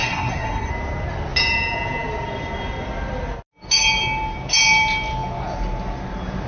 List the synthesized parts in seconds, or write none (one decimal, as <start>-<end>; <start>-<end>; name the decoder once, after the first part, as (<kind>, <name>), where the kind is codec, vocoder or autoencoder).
0.0-0.7 (codec, SNAC)